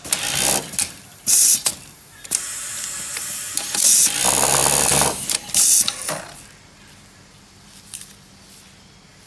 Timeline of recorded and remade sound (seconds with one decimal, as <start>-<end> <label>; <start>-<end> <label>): 0.0-9.3 recorded